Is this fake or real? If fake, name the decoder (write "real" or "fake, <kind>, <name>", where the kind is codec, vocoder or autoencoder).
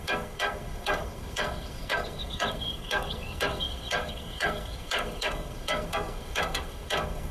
fake, codec, SNAC